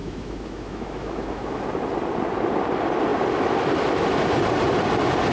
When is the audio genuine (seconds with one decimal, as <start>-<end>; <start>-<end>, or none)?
1.6-5.3